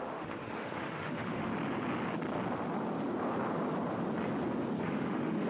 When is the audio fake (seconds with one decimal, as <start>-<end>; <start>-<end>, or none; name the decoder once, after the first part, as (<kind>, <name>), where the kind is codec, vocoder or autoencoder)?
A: 0.0-1.5 (autoencoder, DAC-VAE); 4.8-5.5